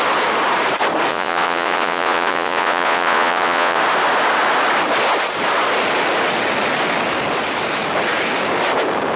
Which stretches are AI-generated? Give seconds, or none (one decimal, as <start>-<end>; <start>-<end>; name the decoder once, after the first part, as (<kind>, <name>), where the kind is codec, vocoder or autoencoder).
1.1-3.8 (vocoder, Vocos)